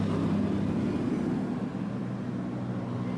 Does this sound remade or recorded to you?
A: recorded